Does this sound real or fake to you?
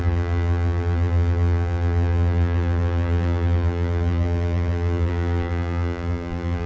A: fake